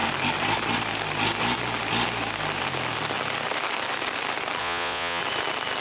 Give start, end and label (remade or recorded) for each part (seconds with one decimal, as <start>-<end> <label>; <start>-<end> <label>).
0.0-4.6 recorded; 4.6-5.2 remade; 5.2-5.8 recorded